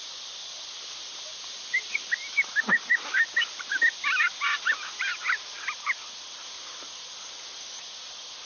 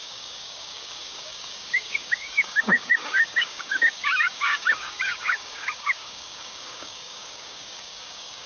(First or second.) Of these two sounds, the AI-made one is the second